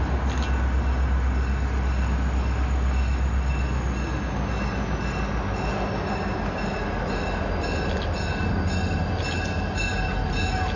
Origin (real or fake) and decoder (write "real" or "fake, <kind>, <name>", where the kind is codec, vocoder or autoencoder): real